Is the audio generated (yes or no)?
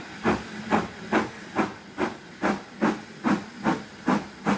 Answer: no